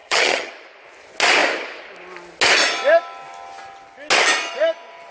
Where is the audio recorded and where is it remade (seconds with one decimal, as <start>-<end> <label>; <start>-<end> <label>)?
0.0-0.5 remade; 0.5-5.1 recorded